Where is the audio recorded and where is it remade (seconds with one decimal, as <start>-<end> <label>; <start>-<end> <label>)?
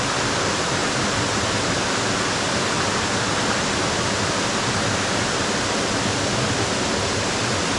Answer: 0.0-7.8 recorded